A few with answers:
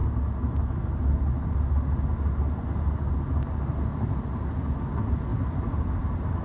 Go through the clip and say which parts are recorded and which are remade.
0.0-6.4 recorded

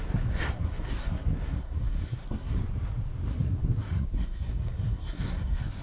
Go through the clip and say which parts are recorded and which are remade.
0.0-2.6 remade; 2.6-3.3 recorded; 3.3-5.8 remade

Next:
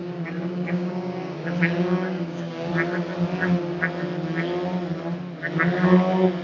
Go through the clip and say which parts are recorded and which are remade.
0.0-2.7 remade; 2.7-6.4 recorded